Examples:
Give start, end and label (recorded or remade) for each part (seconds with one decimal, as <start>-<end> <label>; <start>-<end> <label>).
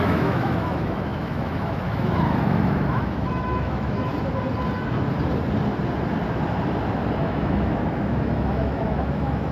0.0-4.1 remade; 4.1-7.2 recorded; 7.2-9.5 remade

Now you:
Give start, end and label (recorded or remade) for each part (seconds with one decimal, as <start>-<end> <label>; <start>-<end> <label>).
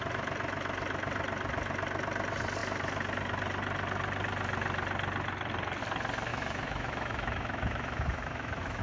0.0-6.3 recorded; 6.3-8.8 remade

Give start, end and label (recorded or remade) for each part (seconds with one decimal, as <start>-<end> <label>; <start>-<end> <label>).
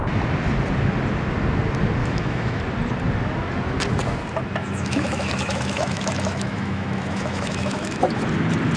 0.0-2.0 recorded; 2.0-2.6 remade; 2.6-4.6 recorded; 4.6-8.1 remade; 8.1-8.8 recorded